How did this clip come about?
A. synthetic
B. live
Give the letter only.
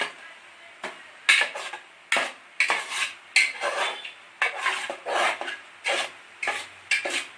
B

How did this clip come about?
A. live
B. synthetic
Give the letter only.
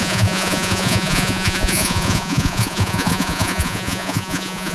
B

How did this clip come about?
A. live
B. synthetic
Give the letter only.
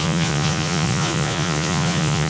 B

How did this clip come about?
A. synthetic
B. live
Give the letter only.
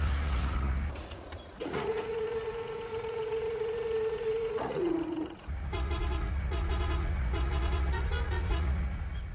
A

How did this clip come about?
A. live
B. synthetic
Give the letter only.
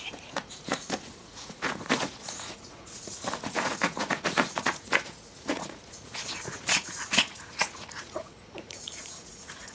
B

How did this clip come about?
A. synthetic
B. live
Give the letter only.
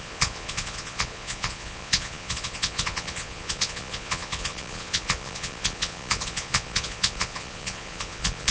A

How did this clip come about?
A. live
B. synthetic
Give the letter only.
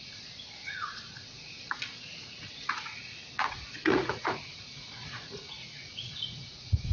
B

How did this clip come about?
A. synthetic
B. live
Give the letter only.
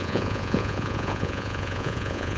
A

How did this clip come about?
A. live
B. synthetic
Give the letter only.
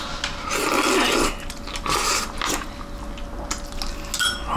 A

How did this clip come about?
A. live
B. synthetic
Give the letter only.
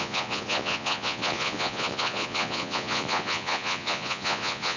B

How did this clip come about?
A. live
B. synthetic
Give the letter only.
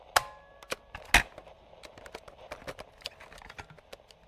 A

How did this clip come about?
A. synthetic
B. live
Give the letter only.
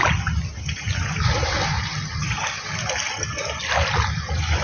B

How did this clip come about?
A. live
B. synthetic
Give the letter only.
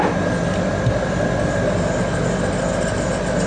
A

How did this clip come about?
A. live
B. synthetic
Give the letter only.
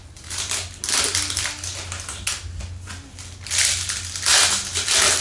A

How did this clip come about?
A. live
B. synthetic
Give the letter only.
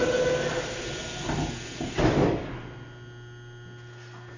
A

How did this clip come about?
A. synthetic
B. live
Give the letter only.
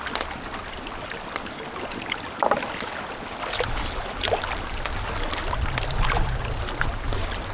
B